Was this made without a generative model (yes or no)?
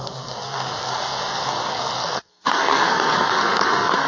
no